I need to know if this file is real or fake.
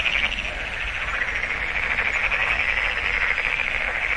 real